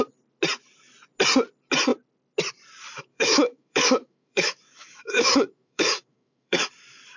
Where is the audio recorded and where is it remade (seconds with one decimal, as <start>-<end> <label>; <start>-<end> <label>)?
0.0-3.1 recorded; 3.1-6.7 remade; 6.7-7.2 recorded

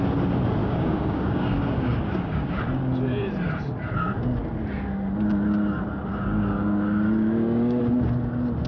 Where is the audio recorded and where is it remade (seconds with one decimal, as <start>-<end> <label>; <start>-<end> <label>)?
0.0-0.6 recorded; 0.6-2.5 remade; 2.5-6.1 recorded; 6.1-7.8 remade; 7.8-8.7 recorded